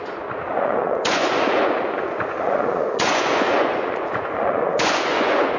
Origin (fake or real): fake